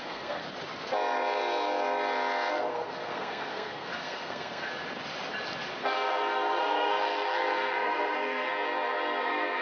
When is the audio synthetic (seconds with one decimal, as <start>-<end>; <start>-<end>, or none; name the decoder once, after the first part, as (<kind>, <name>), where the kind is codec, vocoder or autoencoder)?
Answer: 0.0-0.4 (codec, SNAC); 2.5-4.7; 5.8-8.5; 9.2-9.6